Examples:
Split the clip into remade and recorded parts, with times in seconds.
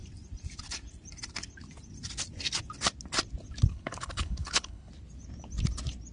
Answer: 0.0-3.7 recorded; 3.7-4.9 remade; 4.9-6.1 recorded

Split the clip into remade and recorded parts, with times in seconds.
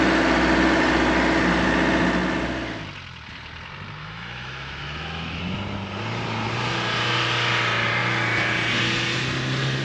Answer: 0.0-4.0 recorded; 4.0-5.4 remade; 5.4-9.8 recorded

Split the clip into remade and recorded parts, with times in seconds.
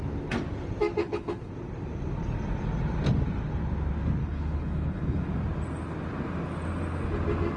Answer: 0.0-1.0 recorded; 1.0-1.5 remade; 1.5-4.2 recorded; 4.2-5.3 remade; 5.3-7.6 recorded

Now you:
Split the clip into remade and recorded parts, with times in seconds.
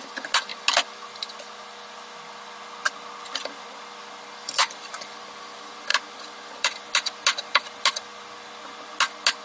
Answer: 0.0-4.6 recorded; 4.6-5.2 remade; 5.2-9.4 recorded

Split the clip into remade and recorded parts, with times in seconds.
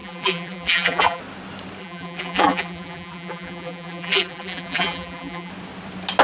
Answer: 0.0-1.2 remade; 1.2-1.8 recorded; 1.8-5.5 remade; 5.5-6.2 recorded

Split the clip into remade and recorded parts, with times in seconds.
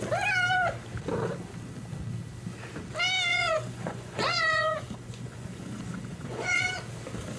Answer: 0.0-3.3 recorded; 3.3-6.6 remade; 6.6-7.4 recorded